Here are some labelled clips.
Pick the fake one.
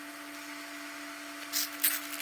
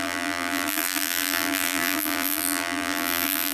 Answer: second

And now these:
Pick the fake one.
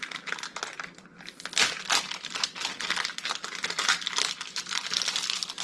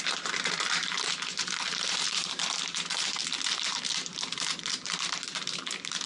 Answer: second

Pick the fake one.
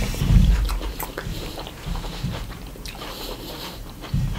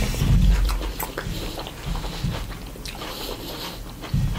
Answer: first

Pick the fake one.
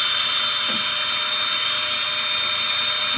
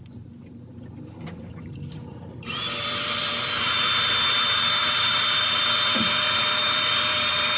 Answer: second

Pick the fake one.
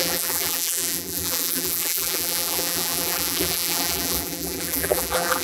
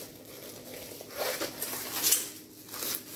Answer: first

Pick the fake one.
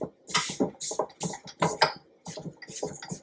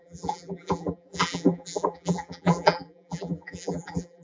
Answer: second